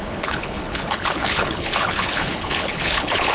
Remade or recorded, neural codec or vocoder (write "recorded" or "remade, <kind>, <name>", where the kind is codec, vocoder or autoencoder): remade, codec, HILCodec